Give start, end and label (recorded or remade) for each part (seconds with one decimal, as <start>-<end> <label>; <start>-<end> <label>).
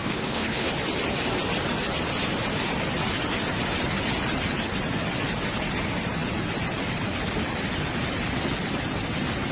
0.0-0.7 remade; 0.7-9.5 recorded